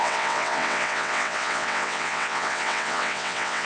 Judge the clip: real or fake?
fake